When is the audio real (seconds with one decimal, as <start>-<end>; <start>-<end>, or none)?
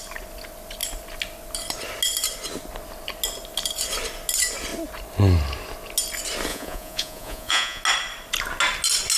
0.0-6.5; 7.8-9.2